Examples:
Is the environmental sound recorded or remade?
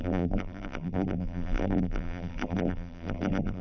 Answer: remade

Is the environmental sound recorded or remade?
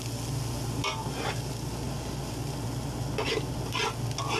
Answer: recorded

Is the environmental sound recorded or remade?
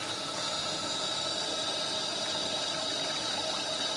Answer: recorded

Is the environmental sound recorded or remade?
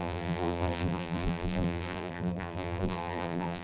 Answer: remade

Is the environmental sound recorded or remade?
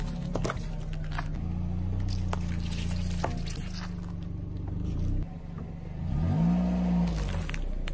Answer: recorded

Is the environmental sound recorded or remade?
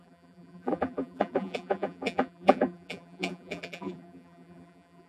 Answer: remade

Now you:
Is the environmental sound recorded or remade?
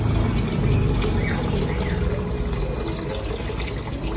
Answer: recorded